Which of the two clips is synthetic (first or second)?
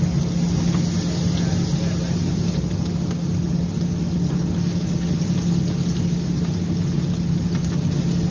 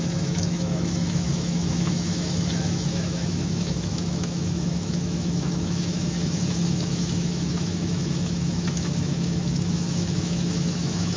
second